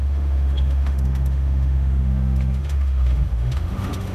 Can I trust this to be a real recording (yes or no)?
no